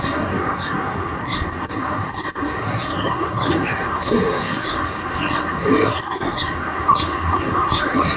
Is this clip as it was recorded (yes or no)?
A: no